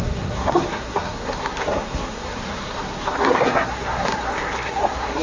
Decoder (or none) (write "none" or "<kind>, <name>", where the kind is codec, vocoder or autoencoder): codec, SNAC